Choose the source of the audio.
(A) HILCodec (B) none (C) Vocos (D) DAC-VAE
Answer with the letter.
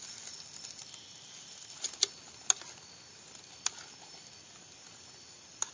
B